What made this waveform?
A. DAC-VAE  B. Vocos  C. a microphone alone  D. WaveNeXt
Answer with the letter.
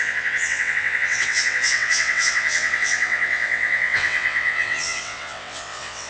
D